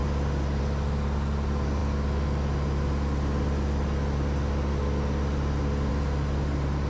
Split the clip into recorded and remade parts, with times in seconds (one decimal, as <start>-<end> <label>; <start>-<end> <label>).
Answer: 0.0-6.9 recorded